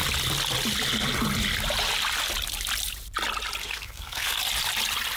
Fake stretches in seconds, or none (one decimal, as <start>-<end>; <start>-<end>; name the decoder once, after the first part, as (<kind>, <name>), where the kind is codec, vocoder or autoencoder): 3.6-4.4 (codec, SNAC)